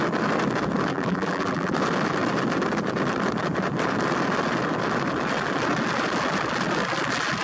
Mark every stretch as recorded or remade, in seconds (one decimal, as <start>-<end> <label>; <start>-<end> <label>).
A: 0.0-0.9 recorded; 0.9-1.7 remade; 1.7-7.4 recorded